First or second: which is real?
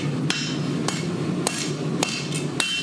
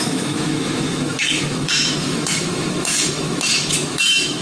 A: first